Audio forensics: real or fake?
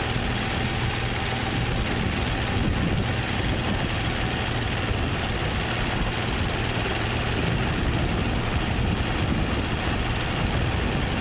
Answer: real